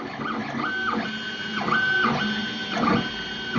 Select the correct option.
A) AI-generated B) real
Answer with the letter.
B